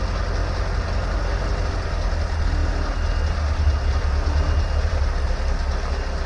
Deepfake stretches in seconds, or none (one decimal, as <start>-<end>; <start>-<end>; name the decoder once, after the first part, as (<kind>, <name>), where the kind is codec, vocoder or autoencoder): none

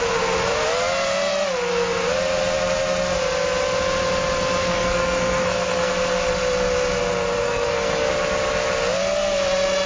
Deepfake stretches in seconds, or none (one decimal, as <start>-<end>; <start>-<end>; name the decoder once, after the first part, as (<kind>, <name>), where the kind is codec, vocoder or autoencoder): 4.6-5.9 (codec, SNAC); 7.4-8.1

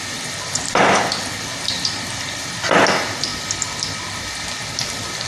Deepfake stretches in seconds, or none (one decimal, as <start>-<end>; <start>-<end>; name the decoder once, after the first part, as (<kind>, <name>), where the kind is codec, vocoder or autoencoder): none

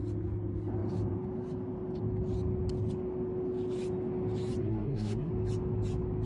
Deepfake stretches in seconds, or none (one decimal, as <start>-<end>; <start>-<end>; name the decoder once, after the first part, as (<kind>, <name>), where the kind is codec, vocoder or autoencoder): 4.6-5.3 (codec, SNAC)

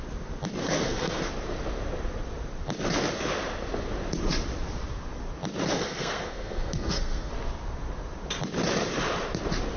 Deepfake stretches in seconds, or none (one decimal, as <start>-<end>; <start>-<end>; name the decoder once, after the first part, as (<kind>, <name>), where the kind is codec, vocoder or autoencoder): 0.6-1.2 (codec, SNAC); 5.7-7.3

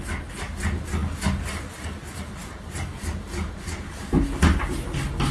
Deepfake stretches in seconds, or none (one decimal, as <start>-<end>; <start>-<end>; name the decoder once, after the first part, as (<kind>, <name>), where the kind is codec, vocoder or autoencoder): none

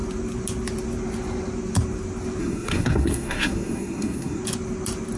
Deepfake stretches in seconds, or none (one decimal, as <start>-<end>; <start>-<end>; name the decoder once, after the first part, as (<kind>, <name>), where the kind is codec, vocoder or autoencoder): 2.4-4.4 (codec, SNAC)